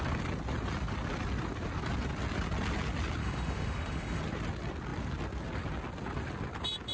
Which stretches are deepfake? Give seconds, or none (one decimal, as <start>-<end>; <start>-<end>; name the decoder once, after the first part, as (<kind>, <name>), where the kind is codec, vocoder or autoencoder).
3.2-4.2 (autoencoder, DAC-VAE)